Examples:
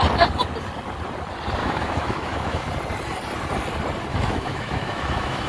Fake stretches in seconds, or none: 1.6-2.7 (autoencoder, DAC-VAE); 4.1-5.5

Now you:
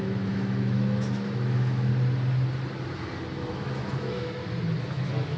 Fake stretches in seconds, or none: 0.0-1.9 (autoencoder, DAC-VAE); 3.5-4.4; 4.9-5.4

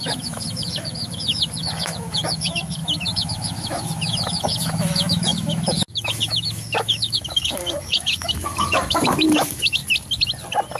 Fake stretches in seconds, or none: 0.0-9.8 (autoencoder, DAC-VAE)

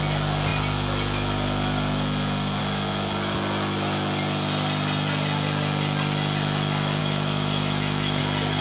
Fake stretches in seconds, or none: 7.0-8.2 (autoencoder, DAC-VAE)

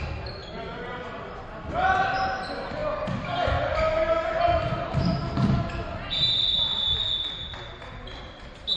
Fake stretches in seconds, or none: none

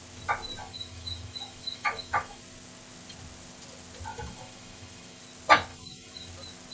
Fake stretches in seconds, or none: 0.6-2.4 (autoencoder, DAC-VAE); 4.1-5.2; 5.7-6.3

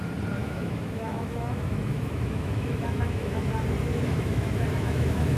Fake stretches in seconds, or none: 0.4-3.5 (autoencoder, DAC-VAE); 3.9-5.4

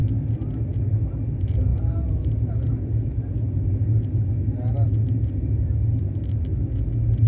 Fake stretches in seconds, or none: none